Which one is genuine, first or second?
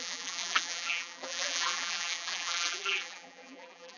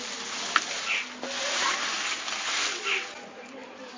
second